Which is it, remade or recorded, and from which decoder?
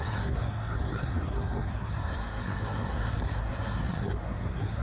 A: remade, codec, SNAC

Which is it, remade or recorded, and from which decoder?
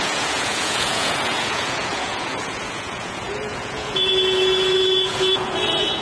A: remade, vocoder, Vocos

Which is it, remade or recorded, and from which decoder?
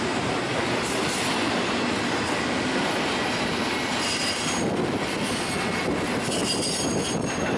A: recorded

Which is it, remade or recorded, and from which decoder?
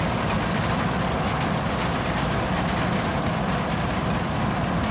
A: recorded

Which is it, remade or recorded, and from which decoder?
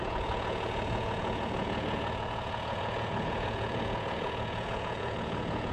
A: remade, vocoder, Vocos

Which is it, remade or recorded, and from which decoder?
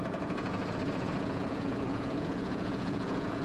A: remade, vocoder, Vocos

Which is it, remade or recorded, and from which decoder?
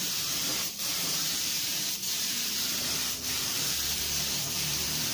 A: remade, vocoder, BigVGAN v2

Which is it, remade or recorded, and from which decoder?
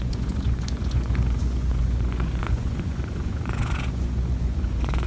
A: remade, vocoder, Vocos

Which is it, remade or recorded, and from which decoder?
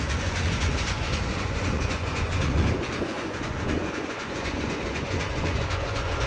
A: remade, vocoder, Vocos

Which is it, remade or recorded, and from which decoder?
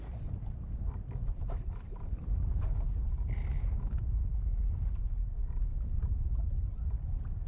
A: recorded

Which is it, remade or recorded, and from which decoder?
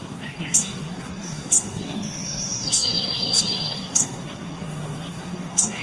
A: remade, codec, SNAC